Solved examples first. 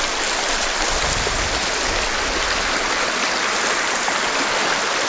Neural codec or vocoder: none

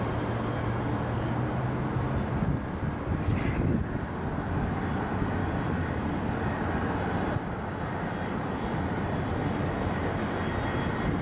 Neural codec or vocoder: none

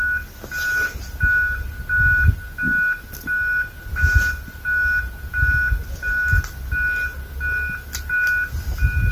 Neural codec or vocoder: none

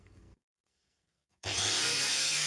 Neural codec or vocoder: codec, SNAC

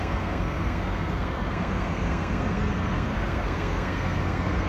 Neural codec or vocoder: codec, SNAC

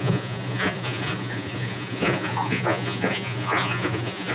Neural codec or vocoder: vocoder, Vocos